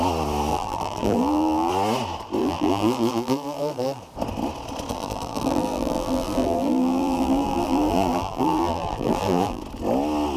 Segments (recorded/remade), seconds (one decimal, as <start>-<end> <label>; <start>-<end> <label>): 0.0-0.5 recorded; 0.5-1.7 remade; 1.7-2.4 recorded; 2.4-4.0 remade; 4.0-4.9 recorded; 4.9-9.6 remade; 9.6-10.4 recorded